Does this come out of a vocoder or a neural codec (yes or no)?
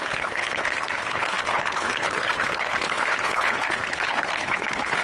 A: yes